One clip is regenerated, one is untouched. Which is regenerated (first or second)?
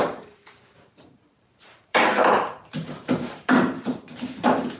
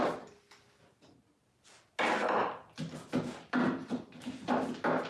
first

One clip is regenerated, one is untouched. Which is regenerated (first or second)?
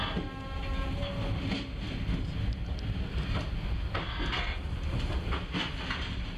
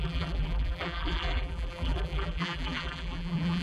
second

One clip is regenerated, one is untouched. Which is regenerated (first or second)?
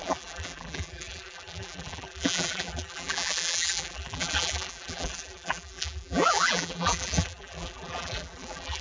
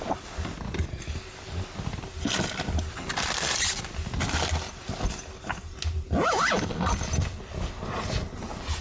first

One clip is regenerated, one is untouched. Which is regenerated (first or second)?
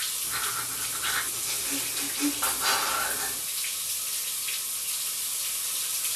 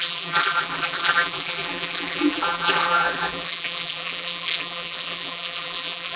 second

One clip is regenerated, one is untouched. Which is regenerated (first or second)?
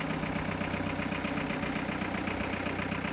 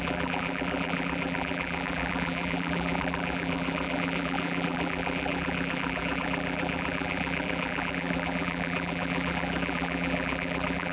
second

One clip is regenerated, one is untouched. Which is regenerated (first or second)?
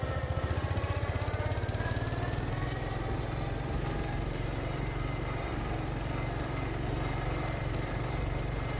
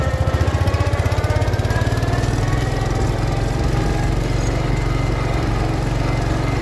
first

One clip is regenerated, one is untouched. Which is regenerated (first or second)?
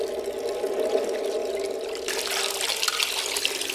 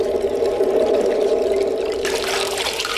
second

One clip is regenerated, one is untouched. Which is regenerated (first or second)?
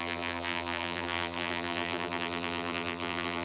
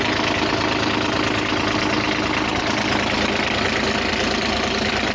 first